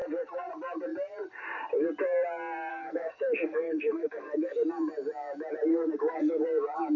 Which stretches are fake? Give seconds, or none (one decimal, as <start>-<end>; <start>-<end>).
0.0-0.5; 2.7-4.7; 5.7-6.4